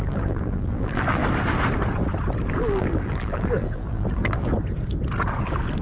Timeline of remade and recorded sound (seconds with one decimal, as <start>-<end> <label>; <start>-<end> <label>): 0.0-1.2 remade; 1.2-2.6 recorded; 2.6-4.5 remade; 4.5-5.8 recorded